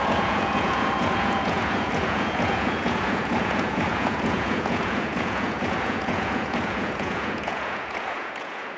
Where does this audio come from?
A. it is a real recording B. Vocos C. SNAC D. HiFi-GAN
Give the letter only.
B